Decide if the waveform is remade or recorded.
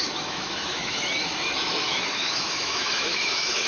remade